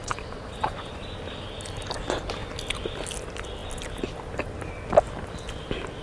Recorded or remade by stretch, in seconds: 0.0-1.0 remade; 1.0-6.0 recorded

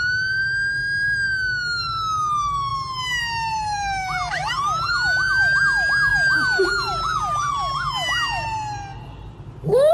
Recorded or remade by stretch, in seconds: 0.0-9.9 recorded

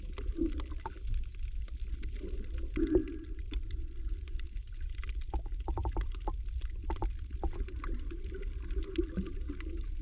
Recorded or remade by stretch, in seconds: 0.0-10.0 recorded

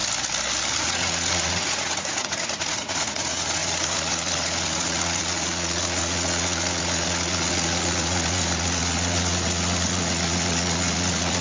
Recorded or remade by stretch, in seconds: 0.0-0.8 recorded; 0.8-11.4 remade

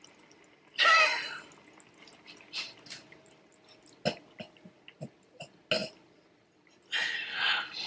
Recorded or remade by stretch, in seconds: 0.0-7.9 recorded